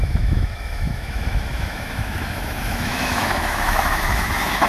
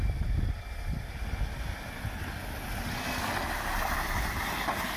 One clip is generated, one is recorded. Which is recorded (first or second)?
second